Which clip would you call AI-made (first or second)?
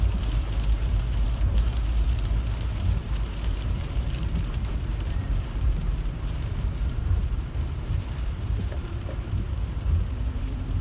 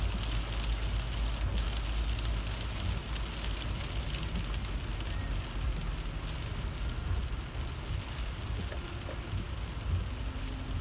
first